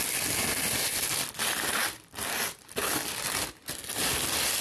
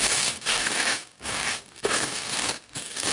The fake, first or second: second